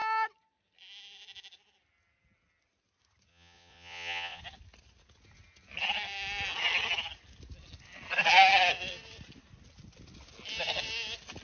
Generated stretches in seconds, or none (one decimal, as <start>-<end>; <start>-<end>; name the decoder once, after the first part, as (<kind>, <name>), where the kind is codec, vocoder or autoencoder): 3.3-4.4 (vocoder, Vocos)